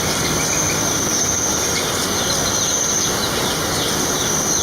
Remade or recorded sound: recorded